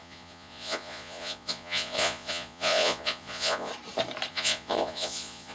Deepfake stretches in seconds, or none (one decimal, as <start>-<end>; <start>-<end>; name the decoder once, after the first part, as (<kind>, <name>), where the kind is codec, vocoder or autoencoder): 0.0-3.7 (vocoder, Vocos); 4.3-5.5